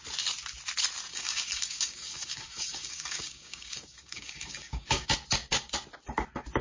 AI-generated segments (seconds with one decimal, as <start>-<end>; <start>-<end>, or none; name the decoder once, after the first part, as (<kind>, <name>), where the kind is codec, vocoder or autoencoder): 1.1-5.1 (codec, DAC)